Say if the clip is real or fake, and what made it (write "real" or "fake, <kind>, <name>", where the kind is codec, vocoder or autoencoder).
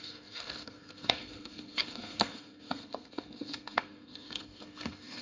fake, codec, SNAC